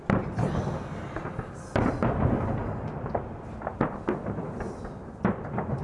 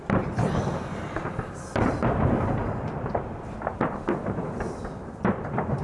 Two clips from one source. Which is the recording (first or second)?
first